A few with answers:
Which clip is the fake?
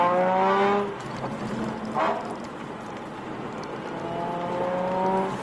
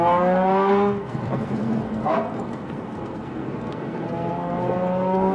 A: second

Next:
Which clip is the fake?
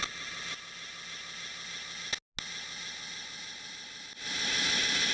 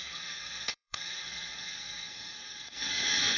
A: second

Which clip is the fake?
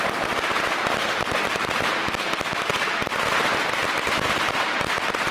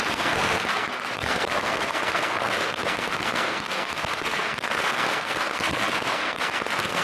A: second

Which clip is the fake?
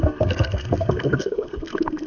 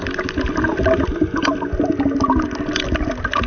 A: first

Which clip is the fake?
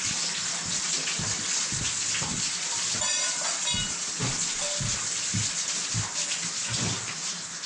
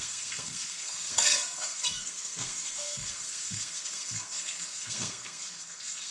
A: second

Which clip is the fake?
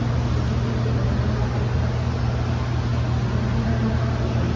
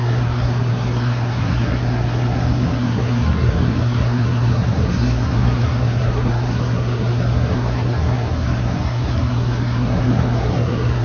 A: second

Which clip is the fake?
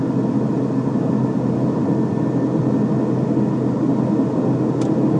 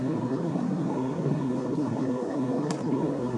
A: second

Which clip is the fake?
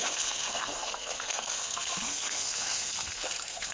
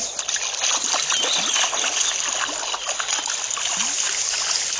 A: first